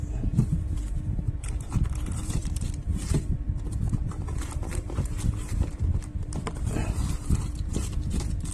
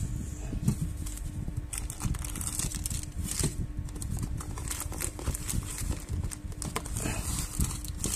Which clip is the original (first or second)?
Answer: second